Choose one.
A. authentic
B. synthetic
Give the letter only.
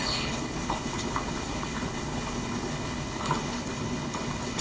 B